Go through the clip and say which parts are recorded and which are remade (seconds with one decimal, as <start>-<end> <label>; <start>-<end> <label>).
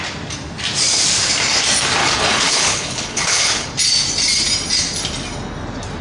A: 0.0-2.0 recorded; 2.0-3.7 remade; 3.7-6.0 recorded